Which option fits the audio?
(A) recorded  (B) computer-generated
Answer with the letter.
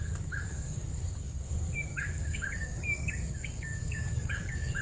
B